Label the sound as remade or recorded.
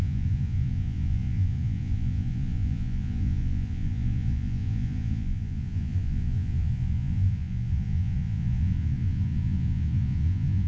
remade